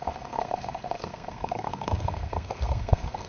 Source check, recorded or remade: remade